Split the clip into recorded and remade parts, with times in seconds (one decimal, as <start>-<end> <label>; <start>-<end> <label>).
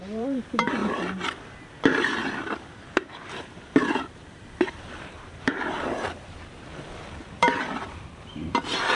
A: 0.0-0.8 remade; 0.8-1.9 recorded; 1.9-9.0 remade